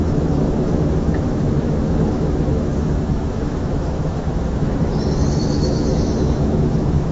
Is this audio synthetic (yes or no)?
yes